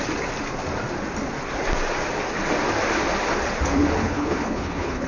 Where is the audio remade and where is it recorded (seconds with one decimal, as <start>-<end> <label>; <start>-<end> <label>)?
0.0-4.0 recorded; 4.0-5.1 remade